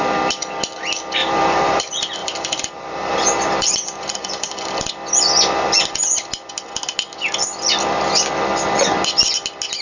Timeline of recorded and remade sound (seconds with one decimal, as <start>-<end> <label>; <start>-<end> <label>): 0.0-1.2 recorded; 1.2-1.8 remade; 1.8-2.2 recorded; 2.2-4.8 remade; 4.8-9.8 recorded